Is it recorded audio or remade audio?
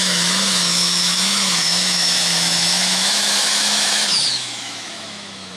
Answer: remade